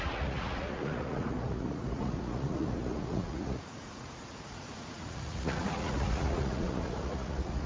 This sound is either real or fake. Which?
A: fake